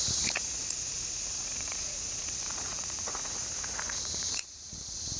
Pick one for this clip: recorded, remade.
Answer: remade